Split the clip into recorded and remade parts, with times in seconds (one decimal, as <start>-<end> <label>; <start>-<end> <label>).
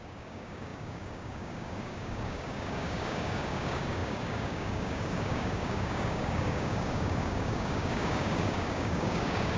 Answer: 0.0-9.6 remade